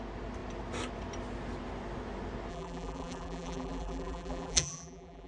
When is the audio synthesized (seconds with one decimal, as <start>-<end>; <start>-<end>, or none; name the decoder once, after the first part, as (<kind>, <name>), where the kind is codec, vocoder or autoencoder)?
2.5-5.3 (vocoder, BigVGAN v2)